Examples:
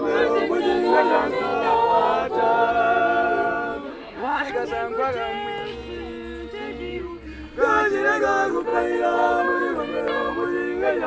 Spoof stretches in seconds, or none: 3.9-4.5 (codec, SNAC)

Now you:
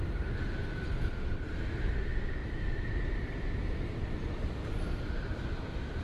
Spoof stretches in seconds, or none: none

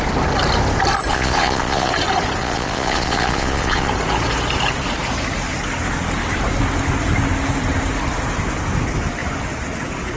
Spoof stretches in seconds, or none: 1.1-1.9 (vocoder, Vocos); 2.4-3.9

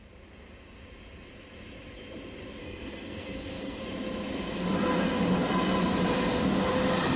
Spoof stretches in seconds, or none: 2.6-3.8 (codec, SNAC)

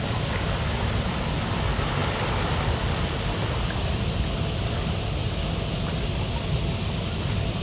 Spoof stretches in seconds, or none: none

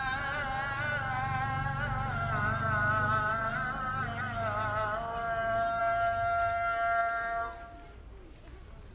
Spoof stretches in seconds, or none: none

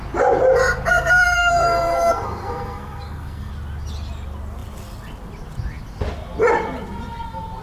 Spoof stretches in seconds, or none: 0.9-3.5 (codec, SNAC)

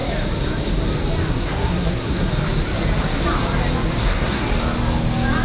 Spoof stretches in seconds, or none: 1.3-2.3 (codec, SNAC); 4.0-4.5